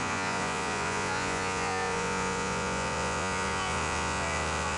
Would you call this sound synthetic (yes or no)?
yes